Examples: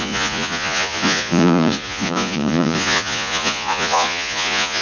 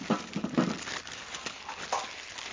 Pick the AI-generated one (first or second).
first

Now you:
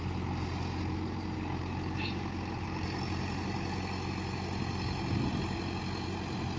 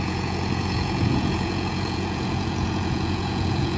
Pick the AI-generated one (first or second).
second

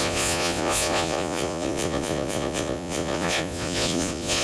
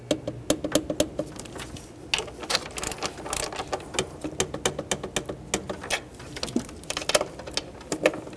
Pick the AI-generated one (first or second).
first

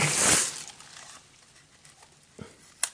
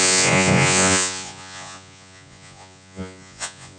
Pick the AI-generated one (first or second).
second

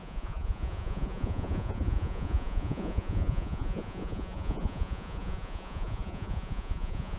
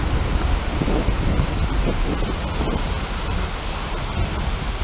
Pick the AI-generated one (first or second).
first